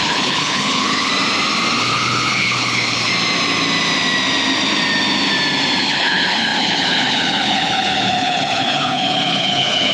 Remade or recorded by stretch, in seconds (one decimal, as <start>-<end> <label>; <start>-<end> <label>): 0.0-1.1 remade; 1.1-1.8 recorded; 1.8-3.1 remade; 3.1-5.8 recorded; 5.8-9.9 remade